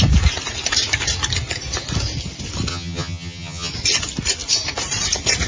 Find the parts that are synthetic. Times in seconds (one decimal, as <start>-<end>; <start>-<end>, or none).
2.7-3.7